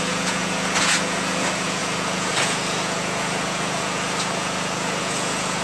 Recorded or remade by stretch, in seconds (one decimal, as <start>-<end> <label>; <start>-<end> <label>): 0.0-5.6 remade